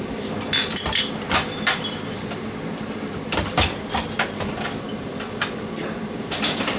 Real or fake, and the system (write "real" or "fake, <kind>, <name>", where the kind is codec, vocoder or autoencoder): fake, vocoder, BigVGAN v2